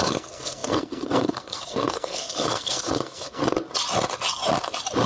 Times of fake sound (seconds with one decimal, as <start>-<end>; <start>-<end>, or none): 0.0-3.4